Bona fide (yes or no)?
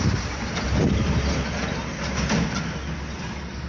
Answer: yes